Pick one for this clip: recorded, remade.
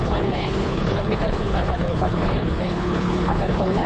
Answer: remade